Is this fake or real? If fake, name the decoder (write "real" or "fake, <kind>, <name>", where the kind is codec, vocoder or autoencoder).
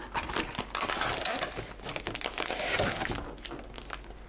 real